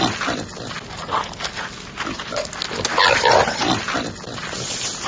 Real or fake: real